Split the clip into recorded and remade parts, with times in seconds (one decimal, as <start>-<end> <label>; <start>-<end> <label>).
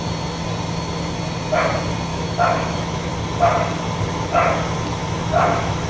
0.0-2.1 recorded; 2.1-3.1 remade; 3.1-5.0 recorded; 5.0-5.9 remade